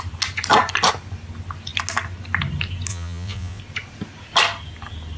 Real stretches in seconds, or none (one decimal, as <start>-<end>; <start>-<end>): 0.0-2.9; 3.6-5.2